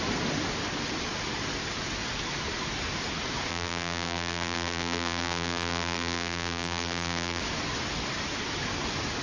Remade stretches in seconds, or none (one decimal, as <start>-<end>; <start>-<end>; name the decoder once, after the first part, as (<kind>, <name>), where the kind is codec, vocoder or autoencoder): 3.5-7.4 (vocoder, BigVGAN v2)